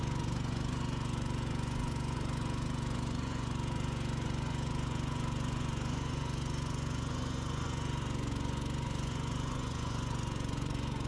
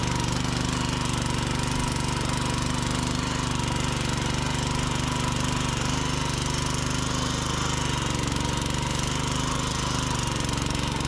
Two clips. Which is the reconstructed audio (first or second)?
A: first